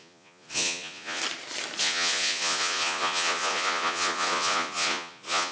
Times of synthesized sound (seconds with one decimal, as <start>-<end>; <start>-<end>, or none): 0.0-1.2; 1.8-5.5